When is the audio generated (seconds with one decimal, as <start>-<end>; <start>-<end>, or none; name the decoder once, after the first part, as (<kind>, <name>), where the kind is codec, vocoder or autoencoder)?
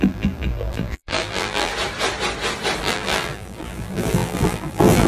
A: 0.0-1.7 (vocoder, BigVGAN v2); 2.8-5.1